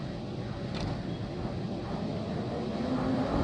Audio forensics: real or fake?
real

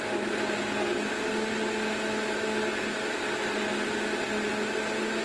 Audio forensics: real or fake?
real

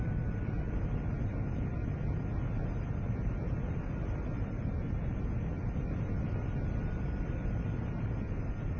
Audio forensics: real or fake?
real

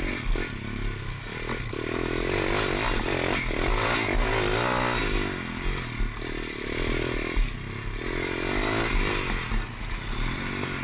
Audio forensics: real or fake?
real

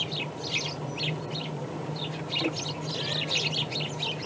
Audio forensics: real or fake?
real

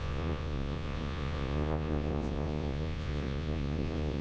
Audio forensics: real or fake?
fake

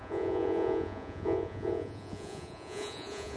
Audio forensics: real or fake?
fake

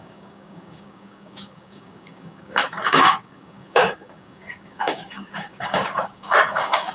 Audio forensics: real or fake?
fake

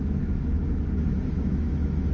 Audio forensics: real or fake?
fake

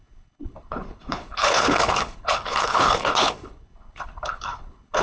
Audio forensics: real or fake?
fake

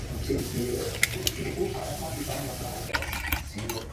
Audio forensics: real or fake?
real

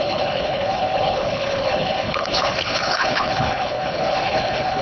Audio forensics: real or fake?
fake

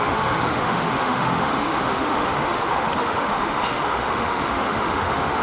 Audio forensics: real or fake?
fake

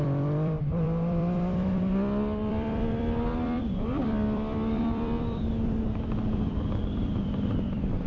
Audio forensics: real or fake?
fake